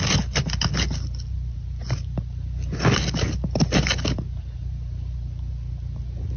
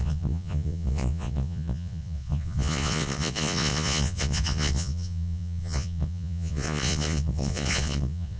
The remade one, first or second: second